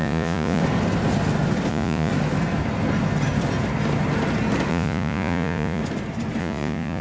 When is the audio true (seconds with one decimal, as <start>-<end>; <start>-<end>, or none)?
0.6-1.7; 2.1-4.7; 5.8-6.4